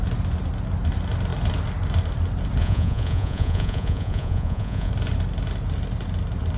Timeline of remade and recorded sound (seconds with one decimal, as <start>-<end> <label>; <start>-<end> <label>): 0.0-2.6 recorded; 2.6-4.9 remade; 4.9-6.6 recorded